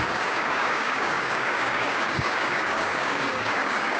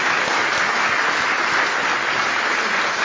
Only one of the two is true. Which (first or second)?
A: second